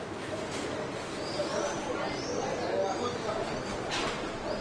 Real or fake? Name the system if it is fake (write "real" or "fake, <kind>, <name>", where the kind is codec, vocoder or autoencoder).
real